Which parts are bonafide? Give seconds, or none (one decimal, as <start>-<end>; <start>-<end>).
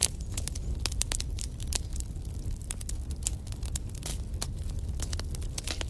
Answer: 0.0-5.9